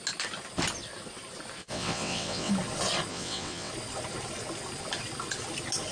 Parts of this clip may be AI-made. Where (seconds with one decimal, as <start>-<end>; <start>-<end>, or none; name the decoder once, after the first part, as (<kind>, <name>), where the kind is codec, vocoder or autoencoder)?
1.6-2.5 (vocoder, WaveNeXt); 3.1-3.7